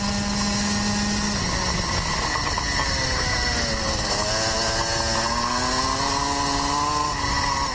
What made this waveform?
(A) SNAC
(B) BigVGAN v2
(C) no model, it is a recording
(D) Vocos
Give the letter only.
C